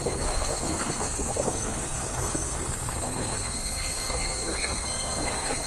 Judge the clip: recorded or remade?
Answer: remade